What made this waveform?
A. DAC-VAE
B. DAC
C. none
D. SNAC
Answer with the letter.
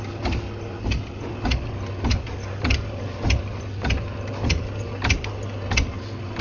C